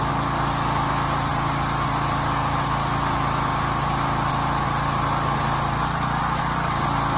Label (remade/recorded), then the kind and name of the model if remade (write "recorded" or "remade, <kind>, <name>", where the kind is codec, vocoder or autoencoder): recorded